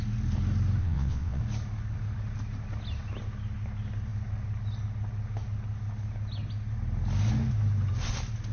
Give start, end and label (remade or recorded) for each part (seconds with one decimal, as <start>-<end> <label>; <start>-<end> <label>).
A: 0.0-0.8 recorded; 0.8-1.4 remade; 1.4-8.5 recorded